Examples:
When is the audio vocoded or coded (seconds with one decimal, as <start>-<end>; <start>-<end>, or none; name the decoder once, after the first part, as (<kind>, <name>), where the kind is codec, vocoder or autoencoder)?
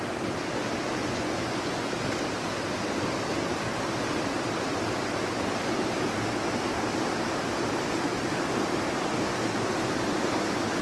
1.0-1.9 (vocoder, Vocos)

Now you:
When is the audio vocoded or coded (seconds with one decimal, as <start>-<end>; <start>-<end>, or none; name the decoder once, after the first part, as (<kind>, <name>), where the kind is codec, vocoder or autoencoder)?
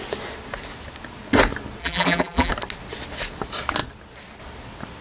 1.8-2.5 (vocoder, BigVGAN v2)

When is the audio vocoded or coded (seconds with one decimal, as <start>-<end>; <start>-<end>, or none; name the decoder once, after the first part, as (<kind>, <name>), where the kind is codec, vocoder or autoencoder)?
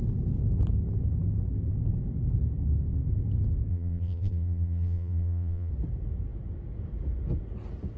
3.7-5.7 (vocoder, BigVGAN v2)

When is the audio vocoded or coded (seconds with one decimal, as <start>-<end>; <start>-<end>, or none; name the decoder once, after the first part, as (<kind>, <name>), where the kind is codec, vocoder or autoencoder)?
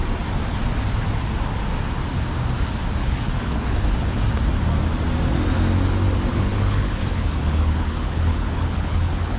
3.0-4.1 (codec, HILCodec); 6.3-9.4